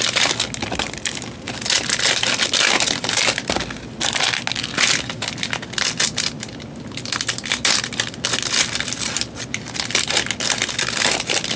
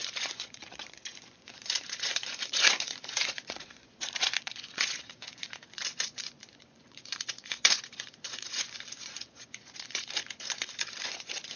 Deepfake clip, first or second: second